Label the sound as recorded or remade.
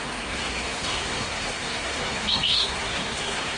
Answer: remade